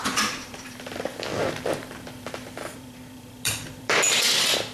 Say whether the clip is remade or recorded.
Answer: remade